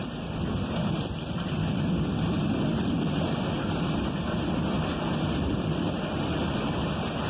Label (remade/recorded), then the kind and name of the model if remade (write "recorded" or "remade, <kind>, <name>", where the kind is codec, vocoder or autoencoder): remade, vocoder, BigVGAN v2